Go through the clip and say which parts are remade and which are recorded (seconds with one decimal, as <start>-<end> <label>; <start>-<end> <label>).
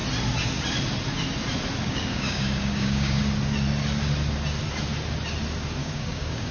0.0-1.8 recorded; 1.8-3.2 remade; 3.2-5.8 recorded; 5.8-6.5 remade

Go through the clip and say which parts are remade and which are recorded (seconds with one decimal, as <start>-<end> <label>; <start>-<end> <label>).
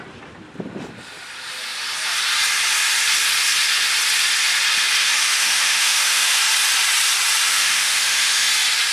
0.0-5.0 recorded; 5.0-6.4 remade; 6.4-7.5 recorded; 7.5-8.5 remade; 8.5-8.9 recorded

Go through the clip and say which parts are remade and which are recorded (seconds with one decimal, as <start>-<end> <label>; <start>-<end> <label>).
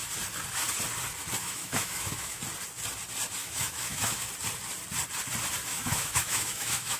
0.0-1.4 recorded; 1.4-2.4 remade; 2.4-3.4 recorded; 3.4-4.3 remade; 4.3-5.7 recorded; 5.7-7.0 remade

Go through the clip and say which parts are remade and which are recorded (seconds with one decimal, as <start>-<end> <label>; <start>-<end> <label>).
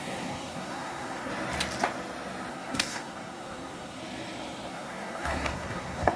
0.0-1.3 remade; 1.3-2.5 recorded; 2.5-4.0 remade; 4.0-4.7 recorded; 4.7-6.2 remade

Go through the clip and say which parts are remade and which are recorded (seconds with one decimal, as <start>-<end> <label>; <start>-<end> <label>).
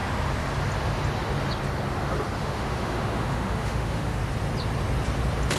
0.0-2.4 recorded; 2.4-4.2 remade; 4.2-5.6 recorded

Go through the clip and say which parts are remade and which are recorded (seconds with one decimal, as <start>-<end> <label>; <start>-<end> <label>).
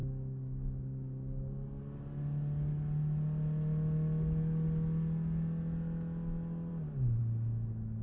0.0-1.8 remade; 1.8-8.0 recorded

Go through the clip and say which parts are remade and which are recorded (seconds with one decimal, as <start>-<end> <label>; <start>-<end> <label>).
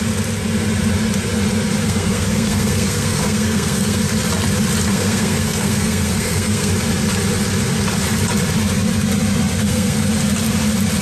0.0-1.8 recorded; 1.8-4.0 remade; 4.0-4.9 recorded; 4.9-6.7 remade; 6.7-9.6 recorded; 9.6-10.1 remade; 10.1-11.0 recorded